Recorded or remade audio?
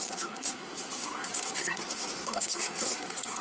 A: remade